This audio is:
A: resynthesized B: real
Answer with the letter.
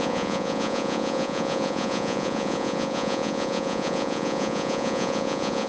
A